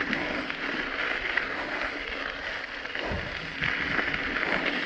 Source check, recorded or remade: recorded